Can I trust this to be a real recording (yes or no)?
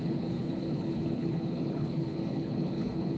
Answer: no